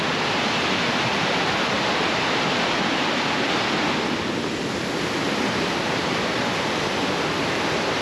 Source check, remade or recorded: recorded